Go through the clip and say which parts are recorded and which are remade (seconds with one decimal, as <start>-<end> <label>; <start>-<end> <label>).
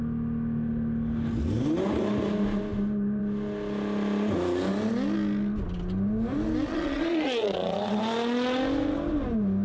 0.0-6.7 recorded; 6.7-8.0 remade; 8.0-9.6 recorded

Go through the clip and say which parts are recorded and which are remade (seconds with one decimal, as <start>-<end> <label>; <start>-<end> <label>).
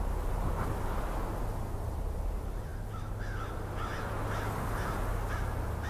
0.0-5.9 recorded